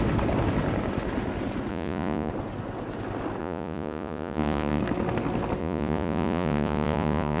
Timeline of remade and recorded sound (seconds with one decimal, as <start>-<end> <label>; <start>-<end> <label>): 0.0-1.7 recorded; 1.7-2.3 remade; 2.3-3.4 recorded; 3.4-4.8 remade; 4.8-5.6 recorded; 5.6-7.4 remade